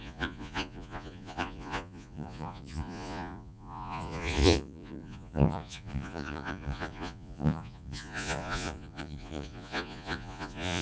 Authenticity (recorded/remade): remade